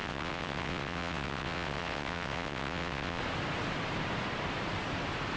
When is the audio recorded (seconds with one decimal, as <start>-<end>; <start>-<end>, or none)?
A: 3.2-5.4